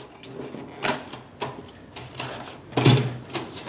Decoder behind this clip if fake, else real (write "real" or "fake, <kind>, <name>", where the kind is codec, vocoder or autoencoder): real